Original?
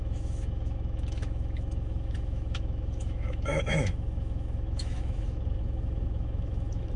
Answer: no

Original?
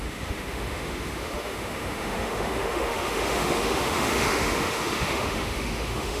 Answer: no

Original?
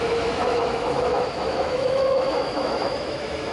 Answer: no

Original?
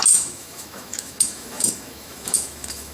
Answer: no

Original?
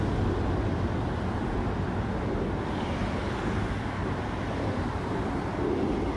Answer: yes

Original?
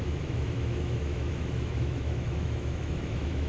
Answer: no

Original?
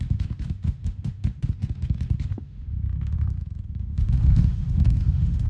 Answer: no